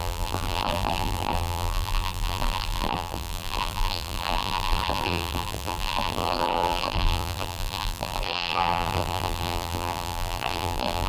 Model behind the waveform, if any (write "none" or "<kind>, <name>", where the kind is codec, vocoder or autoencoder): vocoder, BigVGAN v2